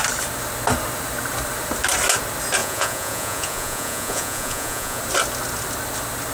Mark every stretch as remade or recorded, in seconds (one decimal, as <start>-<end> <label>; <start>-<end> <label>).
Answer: 0.0-2.6 recorded; 2.6-5.0 remade; 5.0-6.3 recorded